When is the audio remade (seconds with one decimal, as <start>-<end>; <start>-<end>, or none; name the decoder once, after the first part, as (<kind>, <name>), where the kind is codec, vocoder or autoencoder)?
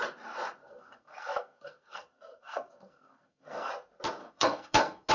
0.6-3.7 (codec, SNAC); 4.2-5.1